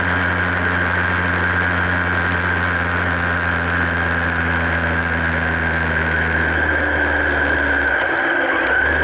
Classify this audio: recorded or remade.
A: recorded